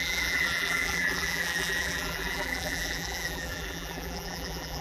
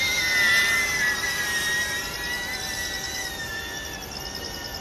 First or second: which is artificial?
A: first